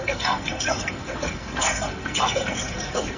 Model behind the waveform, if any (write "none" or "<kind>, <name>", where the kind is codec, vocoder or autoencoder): codec, SNAC